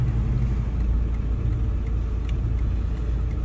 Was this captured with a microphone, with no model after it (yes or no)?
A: yes